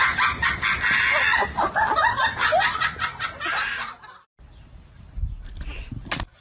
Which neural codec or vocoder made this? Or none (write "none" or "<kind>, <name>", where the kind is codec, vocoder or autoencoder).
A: none